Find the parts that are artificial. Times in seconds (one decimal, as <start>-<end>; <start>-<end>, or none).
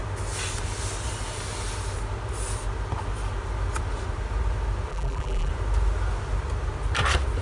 4.9-5.5